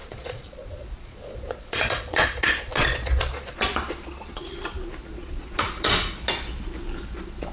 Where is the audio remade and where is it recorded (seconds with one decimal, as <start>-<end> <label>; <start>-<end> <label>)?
0.0-4.4 remade; 4.4-5.1 recorded; 5.1-6.1 remade; 6.1-7.5 recorded